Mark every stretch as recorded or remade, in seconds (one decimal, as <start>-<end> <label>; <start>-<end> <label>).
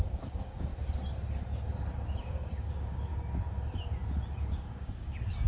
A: 0.0-0.7 remade; 0.7-2.2 recorded; 2.2-3.1 remade; 3.1-4.5 recorded; 4.5-5.5 remade